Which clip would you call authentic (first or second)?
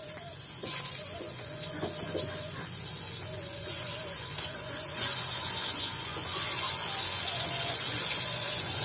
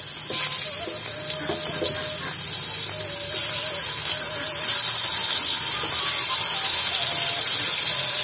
second